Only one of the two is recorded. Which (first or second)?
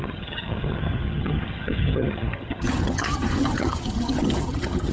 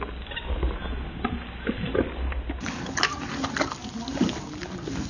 second